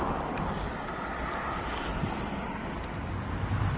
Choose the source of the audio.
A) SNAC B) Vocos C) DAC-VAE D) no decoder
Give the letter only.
D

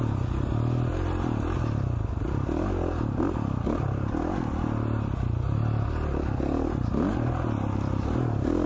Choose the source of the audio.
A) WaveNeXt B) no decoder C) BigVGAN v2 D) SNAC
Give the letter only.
B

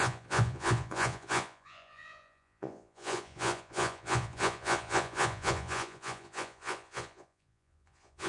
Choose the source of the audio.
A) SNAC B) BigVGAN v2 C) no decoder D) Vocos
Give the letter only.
D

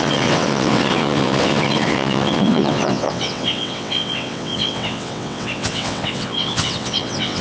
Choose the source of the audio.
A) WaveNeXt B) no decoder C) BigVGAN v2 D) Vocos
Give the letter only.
A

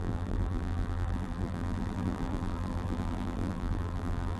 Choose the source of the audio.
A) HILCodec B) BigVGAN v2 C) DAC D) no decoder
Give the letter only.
B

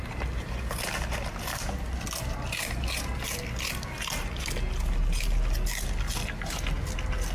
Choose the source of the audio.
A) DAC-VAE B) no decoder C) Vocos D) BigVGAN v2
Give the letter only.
B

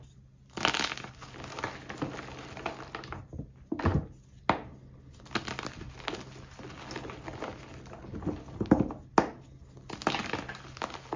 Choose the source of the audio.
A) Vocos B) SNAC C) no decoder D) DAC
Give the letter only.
C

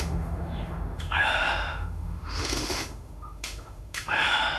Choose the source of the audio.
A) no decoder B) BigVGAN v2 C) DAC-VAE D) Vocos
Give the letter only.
C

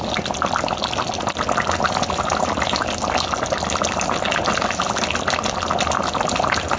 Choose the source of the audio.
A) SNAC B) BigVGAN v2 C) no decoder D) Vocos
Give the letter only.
C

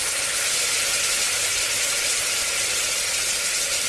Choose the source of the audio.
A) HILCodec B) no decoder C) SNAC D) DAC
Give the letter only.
B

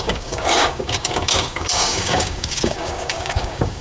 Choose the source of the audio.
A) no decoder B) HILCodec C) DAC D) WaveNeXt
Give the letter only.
C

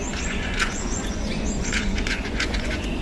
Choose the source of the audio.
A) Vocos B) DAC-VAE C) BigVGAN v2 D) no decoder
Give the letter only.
A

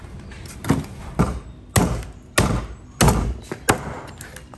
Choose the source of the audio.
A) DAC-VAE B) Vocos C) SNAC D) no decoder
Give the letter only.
D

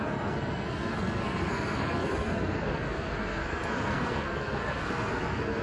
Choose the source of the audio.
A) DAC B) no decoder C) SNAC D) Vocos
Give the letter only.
C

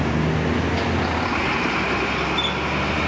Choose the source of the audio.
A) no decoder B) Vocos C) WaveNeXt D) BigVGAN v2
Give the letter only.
A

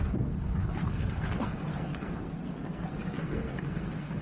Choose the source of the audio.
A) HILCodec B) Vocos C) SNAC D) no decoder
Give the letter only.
C